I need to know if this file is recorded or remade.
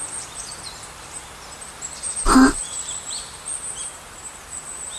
recorded